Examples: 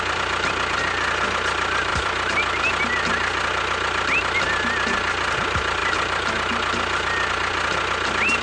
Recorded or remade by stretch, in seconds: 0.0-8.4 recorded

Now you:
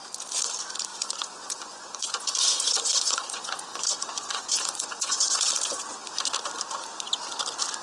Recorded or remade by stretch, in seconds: 0.0-0.9 recorded; 0.9-5.5 remade; 5.5-7.8 recorded